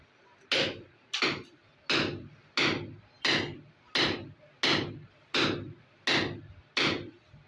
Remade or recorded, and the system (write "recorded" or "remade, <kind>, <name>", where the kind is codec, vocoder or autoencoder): recorded